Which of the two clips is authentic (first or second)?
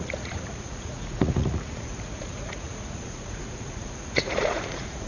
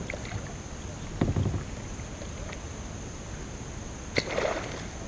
second